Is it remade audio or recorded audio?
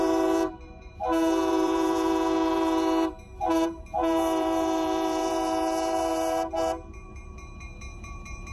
remade